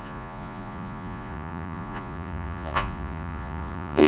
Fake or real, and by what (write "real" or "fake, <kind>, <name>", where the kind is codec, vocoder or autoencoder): fake, vocoder, Vocos